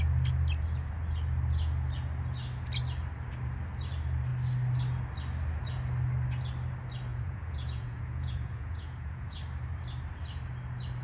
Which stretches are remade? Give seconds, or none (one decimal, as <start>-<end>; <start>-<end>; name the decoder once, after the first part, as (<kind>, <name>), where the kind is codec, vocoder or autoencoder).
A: 7.1-9.4 (vocoder, Vocos)

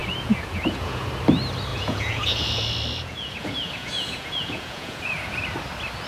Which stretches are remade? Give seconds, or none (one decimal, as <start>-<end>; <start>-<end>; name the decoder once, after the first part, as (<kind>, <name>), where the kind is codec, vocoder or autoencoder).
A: 0.0-1.1 (vocoder, Vocos); 1.7-5.4

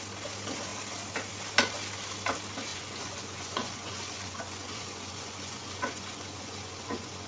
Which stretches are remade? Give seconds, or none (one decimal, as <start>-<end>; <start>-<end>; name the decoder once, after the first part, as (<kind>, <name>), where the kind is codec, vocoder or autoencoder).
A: 2.7-7.3 (vocoder, Vocos)

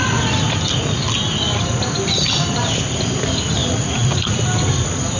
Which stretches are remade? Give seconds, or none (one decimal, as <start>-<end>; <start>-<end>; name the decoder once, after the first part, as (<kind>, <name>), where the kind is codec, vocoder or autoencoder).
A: 3.6-4.4 (vocoder, Vocos)

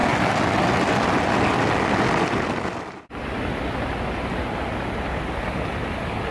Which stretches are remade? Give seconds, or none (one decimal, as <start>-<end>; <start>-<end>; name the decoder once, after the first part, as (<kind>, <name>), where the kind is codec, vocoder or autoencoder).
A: none